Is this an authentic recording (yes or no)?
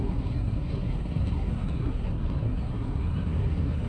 no